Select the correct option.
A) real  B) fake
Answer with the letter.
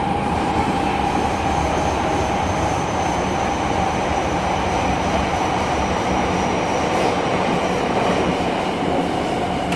B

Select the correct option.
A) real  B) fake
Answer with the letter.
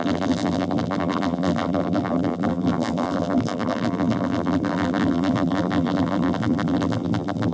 B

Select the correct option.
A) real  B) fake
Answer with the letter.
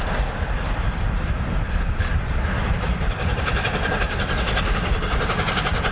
A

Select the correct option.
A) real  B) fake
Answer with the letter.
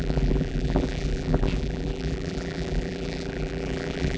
B